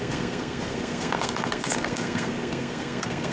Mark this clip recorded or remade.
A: remade